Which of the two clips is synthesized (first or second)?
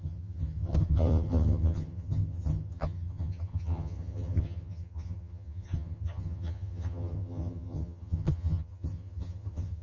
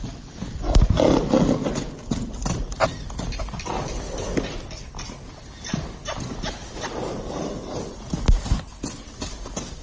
first